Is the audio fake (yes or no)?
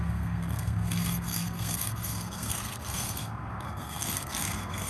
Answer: yes